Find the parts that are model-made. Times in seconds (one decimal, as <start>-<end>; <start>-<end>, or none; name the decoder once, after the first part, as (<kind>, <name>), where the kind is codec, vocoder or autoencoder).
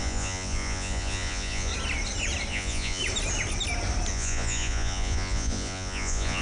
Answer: 0.0-1.7 (vocoder, Vocos); 2.5-3.0; 4.1-6.4